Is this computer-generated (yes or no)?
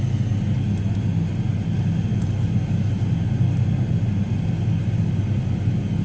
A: no